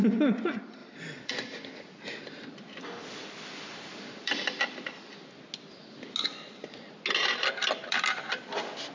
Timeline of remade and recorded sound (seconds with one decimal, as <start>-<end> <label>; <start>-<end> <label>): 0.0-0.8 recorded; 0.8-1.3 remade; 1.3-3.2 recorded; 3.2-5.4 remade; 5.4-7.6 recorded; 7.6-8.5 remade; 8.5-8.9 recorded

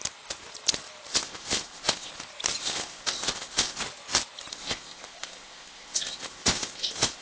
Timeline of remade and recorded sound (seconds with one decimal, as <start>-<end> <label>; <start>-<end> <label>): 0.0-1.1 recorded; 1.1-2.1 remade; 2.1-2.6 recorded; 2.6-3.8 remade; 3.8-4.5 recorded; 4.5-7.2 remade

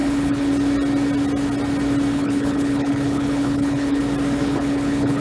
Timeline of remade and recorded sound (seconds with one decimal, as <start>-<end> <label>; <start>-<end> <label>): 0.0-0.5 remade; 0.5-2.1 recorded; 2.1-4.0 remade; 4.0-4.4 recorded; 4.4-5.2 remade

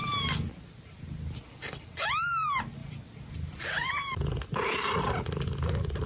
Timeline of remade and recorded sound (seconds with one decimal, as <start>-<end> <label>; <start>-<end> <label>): 0.0-0.5 remade; 0.5-2.8 recorded; 2.8-6.1 remade

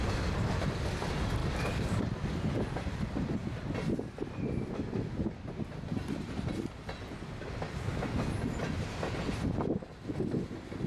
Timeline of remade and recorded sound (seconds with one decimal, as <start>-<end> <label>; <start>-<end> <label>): 0.0-1.4 recorded; 1.4-2.0 remade; 2.0-10.9 recorded